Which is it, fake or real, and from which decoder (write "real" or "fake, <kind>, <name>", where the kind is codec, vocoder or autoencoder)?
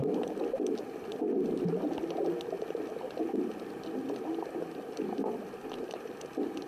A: real